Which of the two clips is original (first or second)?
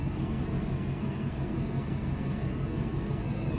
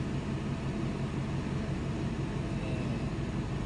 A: second